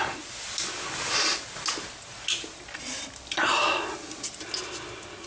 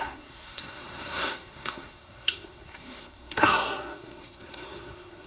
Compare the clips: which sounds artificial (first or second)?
second